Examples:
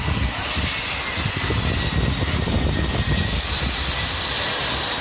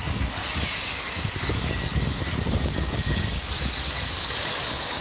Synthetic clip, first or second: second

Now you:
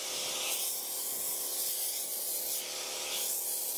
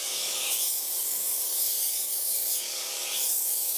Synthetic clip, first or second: second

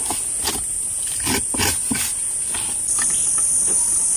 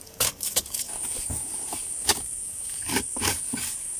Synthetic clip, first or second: second